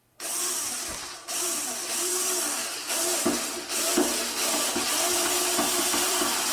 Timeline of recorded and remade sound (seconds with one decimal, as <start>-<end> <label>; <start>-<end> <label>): 0.0-2.1 remade; 2.1-2.9 recorded; 2.9-3.9 remade; 3.9-4.9 recorded; 4.9-6.5 remade